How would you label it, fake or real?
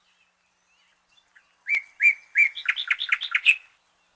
real